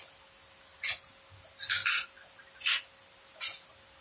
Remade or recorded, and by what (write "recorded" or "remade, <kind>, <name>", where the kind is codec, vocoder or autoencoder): recorded